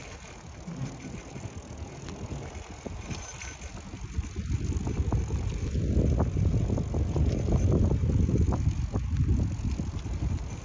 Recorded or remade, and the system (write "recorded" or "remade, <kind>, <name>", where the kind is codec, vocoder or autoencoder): recorded